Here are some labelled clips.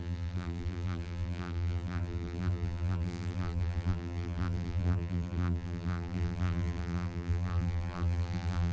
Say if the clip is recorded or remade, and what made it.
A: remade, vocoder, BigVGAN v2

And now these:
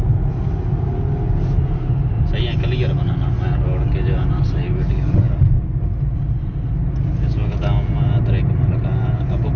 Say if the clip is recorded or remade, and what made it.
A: recorded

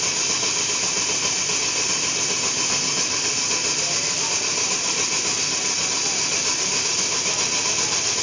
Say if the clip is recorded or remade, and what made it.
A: recorded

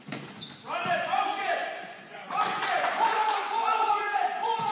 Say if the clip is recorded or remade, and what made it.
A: remade, vocoder, Vocos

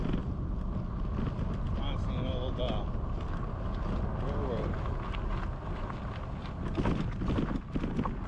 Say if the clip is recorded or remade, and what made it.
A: recorded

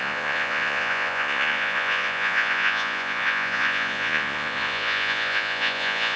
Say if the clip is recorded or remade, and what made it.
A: remade, vocoder, Vocos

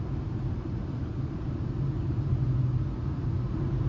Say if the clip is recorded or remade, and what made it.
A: recorded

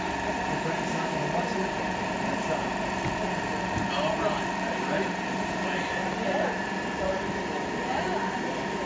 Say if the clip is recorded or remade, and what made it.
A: remade, vocoder, BigVGAN v2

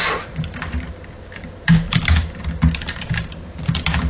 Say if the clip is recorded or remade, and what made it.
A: recorded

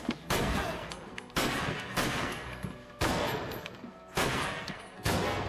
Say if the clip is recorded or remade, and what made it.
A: remade, codec, SNAC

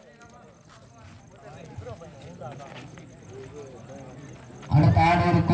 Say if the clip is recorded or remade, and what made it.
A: recorded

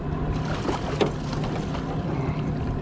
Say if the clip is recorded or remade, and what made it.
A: recorded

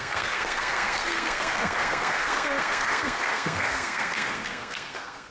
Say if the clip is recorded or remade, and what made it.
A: remade, codec, SNAC